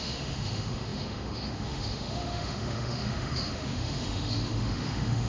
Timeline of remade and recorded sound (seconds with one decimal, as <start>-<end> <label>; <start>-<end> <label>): 0.0-5.3 remade